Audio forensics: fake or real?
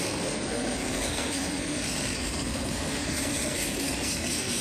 fake